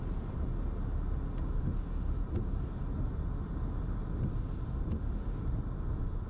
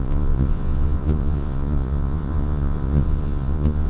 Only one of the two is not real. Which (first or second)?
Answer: second